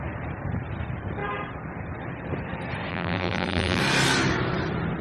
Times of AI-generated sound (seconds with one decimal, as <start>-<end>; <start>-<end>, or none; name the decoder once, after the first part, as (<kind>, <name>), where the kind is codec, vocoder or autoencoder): 2.9-3.8 (vocoder, BigVGAN v2)